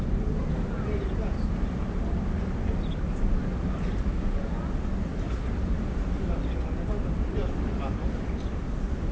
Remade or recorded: recorded